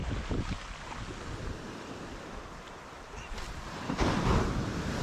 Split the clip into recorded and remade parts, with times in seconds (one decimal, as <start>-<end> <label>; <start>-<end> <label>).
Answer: 0.0-5.0 recorded